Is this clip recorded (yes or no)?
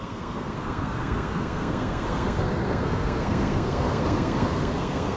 no